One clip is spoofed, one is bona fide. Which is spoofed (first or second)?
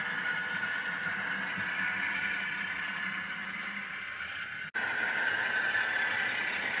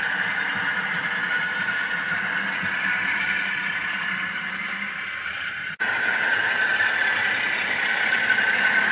second